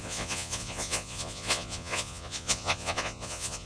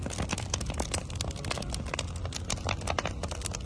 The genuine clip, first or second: second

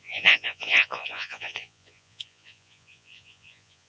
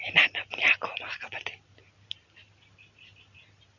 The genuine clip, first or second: second